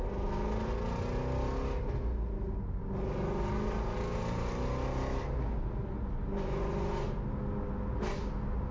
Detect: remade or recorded recorded